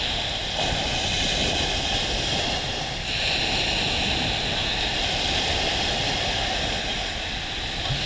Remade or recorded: recorded